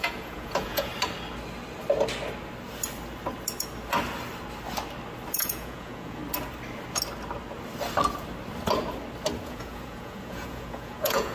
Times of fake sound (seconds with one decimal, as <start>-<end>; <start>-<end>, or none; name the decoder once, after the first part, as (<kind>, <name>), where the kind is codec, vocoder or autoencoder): 0.0-0.9 (vocoder, Vocos); 5.3-6.2; 9.4-11.3